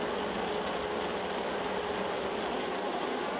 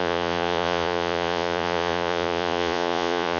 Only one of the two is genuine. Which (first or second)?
first